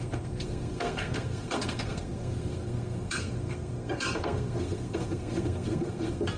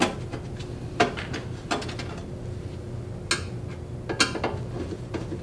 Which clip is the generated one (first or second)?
first